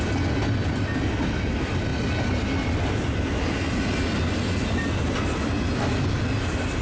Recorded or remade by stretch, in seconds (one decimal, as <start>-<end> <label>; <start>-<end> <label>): 0.0-6.8 recorded

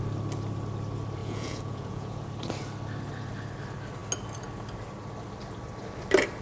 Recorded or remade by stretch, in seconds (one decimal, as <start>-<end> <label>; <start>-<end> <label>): 0.0-1.2 recorded; 1.2-2.3 remade; 2.3-6.4 recorded

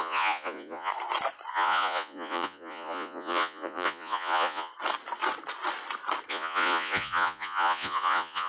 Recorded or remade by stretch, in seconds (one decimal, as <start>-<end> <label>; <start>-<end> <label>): 0.0-0.9 remade; 0.9-1.5 recorded; 1.5-4.7 remade; 4.7-6.3 recorded; 6.3-8.5 remade

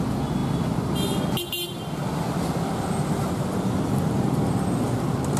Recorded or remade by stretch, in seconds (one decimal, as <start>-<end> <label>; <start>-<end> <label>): 0.0-5.4 recorded